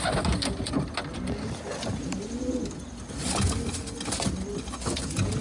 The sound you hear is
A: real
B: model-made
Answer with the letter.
A